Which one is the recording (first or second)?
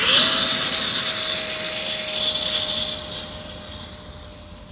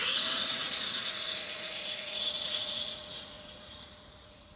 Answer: first